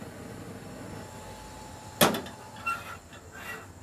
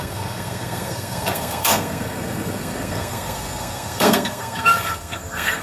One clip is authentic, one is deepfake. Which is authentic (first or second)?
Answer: first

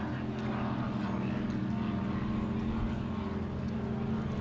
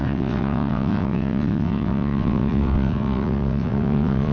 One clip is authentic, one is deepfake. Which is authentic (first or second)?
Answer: first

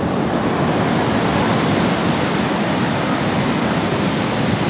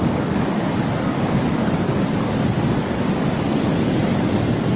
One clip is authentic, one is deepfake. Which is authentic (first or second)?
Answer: first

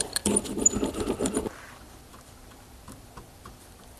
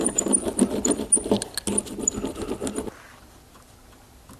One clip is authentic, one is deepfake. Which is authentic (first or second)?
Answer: second